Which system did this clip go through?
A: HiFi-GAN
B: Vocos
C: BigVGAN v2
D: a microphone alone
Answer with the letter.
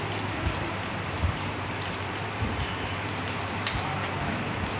C